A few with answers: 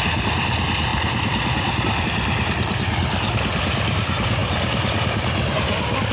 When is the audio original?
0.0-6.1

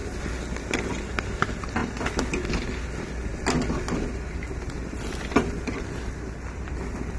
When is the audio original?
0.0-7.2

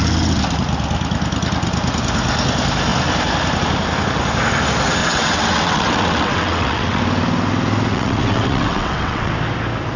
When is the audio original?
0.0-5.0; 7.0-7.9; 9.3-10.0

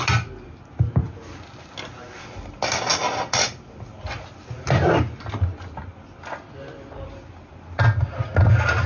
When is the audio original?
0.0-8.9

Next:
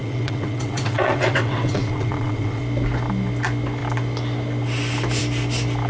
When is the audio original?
2.6-5.9

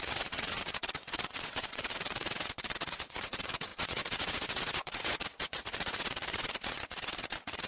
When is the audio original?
none

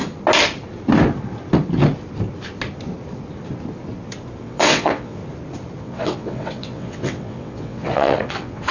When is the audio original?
0.0-4.4; 5.2-5.8